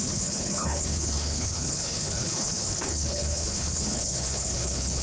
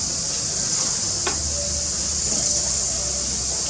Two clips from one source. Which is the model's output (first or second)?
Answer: first